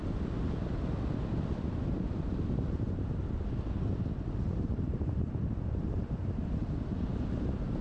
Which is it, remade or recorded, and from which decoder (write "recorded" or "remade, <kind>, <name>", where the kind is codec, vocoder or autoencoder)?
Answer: recorded